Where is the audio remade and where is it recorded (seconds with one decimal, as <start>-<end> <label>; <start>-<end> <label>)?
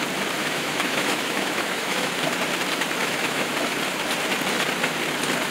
0.0-0.4 recorded; 0.4-2.1 remade; 2.1-3.0 recorded; 3.0-3.5 remade; 3.5-5.5 recorded